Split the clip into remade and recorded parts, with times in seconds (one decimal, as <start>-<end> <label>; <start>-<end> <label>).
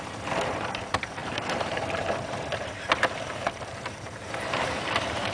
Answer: 0.0-5.3 remade